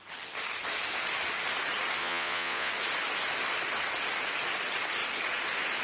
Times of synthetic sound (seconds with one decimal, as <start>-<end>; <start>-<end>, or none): 2.0-2.7